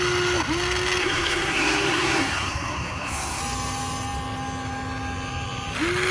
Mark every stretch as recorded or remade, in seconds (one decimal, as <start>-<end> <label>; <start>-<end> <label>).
0.0-1.0 recorded; 1.0-3.4 remade; 3.4-6.1 recorded